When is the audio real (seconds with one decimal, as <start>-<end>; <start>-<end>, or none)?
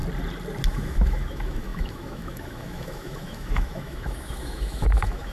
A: 0.0-0.7